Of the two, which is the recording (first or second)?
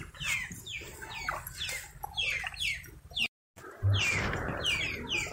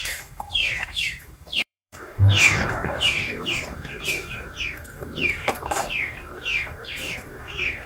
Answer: first